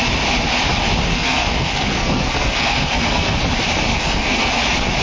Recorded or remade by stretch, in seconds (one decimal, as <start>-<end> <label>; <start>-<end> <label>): 0.0-1.1 recorded; 1.1-3.4 remade; 3.4-3.9 recorded; 3.9-4.5 remade; 4.5-5.0 recorded